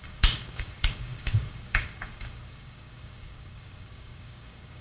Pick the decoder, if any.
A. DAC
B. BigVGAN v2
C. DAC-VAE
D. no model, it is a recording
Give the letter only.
A